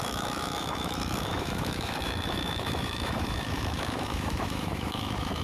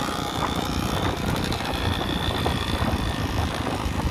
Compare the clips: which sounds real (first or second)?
second